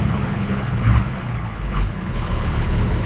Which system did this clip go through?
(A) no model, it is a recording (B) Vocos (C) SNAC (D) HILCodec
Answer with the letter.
D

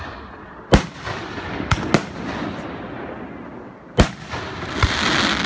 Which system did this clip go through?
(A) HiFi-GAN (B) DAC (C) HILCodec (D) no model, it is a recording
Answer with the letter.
D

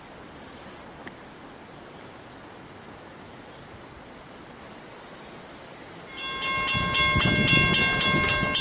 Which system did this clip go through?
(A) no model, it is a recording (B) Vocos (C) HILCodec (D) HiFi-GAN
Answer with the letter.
A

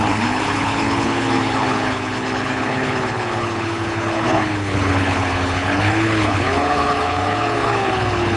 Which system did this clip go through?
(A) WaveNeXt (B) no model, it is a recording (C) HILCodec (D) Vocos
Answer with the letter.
C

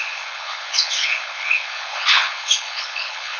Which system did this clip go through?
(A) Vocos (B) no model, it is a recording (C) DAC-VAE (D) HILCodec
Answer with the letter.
D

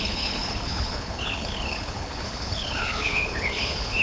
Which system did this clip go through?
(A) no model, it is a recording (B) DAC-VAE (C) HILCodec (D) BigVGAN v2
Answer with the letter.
C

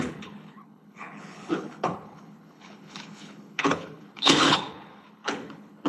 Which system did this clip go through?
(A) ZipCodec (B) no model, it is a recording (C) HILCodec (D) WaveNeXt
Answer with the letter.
C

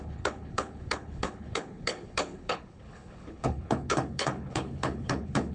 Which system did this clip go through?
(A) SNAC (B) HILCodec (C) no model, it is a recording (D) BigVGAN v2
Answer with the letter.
B